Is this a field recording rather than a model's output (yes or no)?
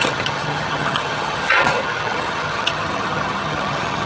no